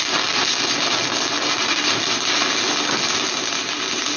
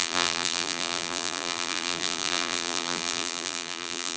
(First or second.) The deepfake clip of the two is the second